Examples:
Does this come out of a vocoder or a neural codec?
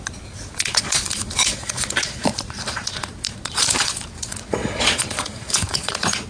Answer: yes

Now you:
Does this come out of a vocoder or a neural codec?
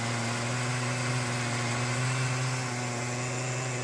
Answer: no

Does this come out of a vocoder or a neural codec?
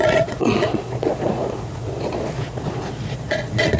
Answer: yes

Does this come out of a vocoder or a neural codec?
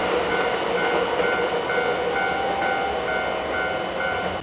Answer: no